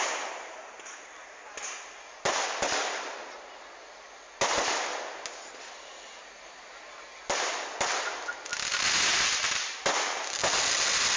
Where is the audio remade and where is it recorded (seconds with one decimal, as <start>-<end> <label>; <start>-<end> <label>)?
0.0-11.2 recorded